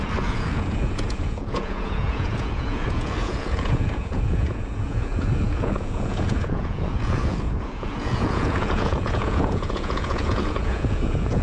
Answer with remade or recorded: remade